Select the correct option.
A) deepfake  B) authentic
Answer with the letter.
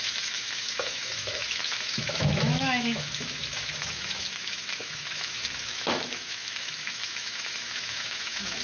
A